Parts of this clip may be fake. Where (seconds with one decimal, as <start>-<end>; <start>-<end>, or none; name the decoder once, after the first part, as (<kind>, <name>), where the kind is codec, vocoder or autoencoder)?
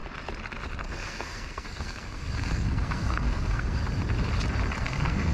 0.8-3.8 (codec, SNAC); 4.8-5.3